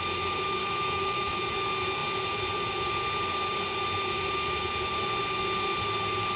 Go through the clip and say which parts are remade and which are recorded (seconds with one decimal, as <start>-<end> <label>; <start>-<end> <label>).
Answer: 0.0-0.6 recorded; 0.6-1.5 remade; 1.5-6.4 recorded